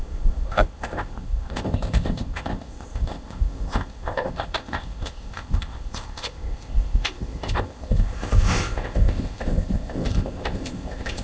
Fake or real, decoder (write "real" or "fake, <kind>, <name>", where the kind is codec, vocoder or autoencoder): fake, codec, ZipCodec